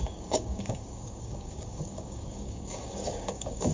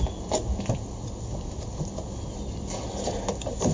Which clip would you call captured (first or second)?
second